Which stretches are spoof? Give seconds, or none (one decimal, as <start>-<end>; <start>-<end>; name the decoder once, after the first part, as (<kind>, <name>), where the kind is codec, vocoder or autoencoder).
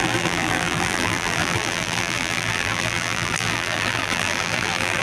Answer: 0.0-5.0 (vocoder, BigVGAN v2)